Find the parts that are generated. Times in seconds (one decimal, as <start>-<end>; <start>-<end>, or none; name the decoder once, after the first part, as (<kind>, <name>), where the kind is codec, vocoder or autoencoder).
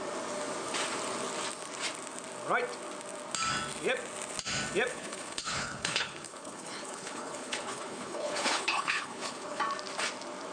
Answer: 4.9-9.6 (codec, HILCodec)